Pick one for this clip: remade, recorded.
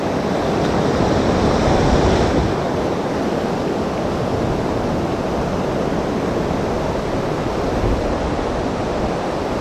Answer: recorded